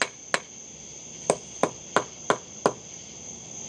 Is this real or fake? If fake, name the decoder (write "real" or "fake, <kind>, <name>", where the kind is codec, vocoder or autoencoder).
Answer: real